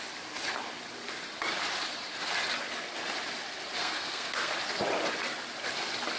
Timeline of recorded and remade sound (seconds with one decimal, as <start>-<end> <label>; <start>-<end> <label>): 0.0-3.8 recorded; 3.8-4.5 remade; 4.5-6.2 recorded